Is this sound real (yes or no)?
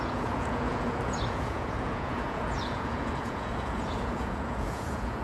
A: no